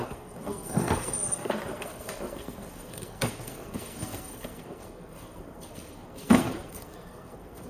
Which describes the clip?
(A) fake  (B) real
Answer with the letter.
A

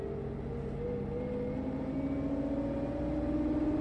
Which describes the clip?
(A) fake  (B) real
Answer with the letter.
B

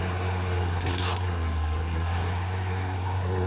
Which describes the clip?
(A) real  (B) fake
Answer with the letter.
B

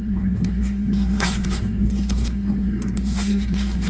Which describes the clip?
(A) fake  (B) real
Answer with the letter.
A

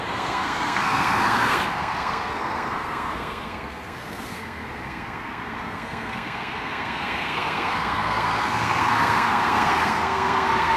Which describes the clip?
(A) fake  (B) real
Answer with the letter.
A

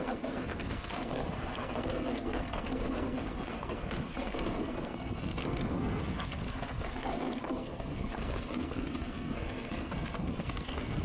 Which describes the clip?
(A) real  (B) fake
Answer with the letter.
B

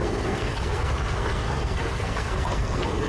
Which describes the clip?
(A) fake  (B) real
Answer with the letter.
A